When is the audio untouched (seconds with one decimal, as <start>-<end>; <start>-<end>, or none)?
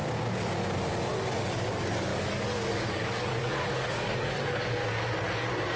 0.0-1.4; 4.8-5.8